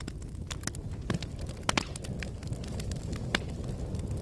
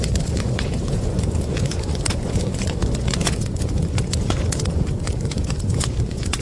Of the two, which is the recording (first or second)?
first